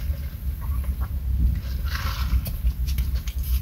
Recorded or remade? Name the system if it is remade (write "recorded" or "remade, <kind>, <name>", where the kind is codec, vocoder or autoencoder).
recorded